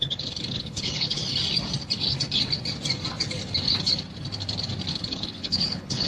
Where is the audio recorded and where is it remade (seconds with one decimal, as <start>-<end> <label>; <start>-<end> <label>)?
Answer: 0.0-1.2 remade; 1.2-4.9 recorded; 4.9-6.1 remade